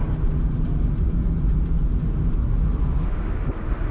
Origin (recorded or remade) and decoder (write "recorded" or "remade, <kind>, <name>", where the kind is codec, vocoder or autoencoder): recorded